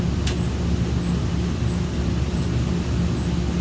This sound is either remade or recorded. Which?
recorded